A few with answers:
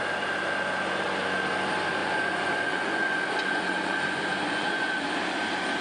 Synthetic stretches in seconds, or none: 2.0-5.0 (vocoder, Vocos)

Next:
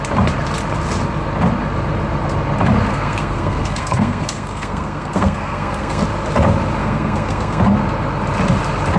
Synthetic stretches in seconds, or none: 2.9-6.0 (codec, SNAC); 6.8-7.6

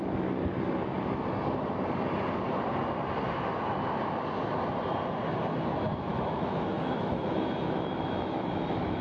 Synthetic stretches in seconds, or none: 5.9-9.0 (autoencoder, DAC-VAE)

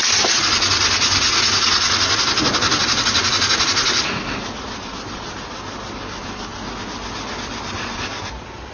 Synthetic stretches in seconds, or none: none

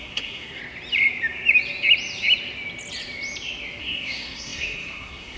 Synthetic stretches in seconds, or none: 0.0-0.6 (codec, SNAC); 3.8-5.4

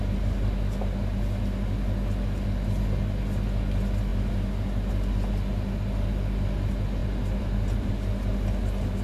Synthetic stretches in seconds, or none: 7.0-7.9 (vocoder, BigVGAN v2)